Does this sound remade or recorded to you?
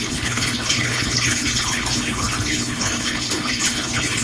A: remade